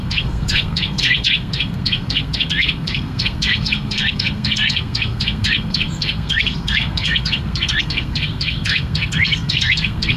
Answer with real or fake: fake